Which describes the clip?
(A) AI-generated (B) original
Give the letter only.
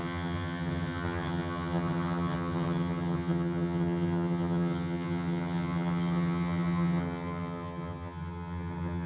A